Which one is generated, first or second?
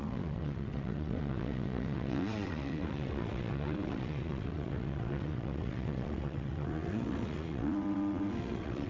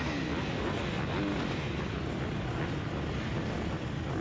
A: first